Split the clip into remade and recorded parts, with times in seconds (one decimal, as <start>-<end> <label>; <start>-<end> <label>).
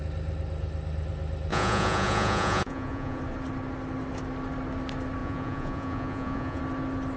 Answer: 0.0-1.5 recorded; 1.5-3.2 remade; 3.2-5.2 recorded; 5.2-6.6 remade; 6.6-7.2 recorded